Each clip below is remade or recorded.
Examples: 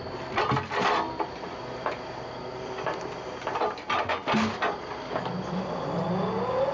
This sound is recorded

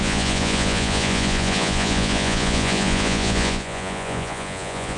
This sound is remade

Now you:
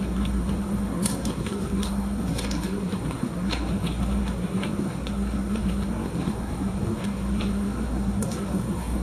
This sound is remade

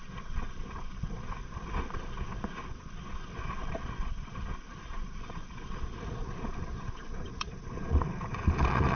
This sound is remade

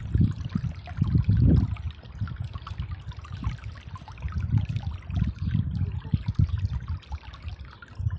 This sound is recorded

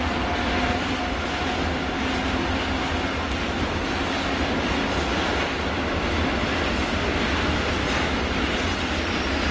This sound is recorded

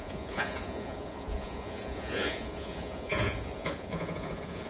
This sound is remade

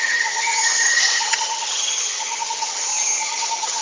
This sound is remade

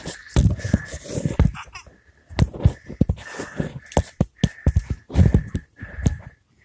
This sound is recorded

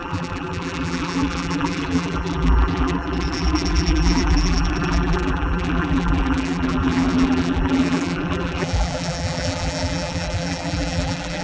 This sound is remade